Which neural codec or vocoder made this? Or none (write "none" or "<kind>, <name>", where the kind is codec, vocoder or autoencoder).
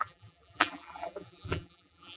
vocoder, BigVGAN v2